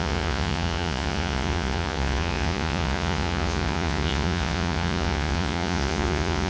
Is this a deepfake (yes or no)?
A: yes